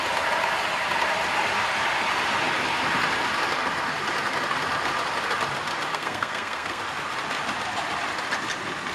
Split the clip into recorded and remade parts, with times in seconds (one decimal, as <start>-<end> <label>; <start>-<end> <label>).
0.0-5.9 recorded; 5.9-6.8 remade; 6.8-8.9 recorded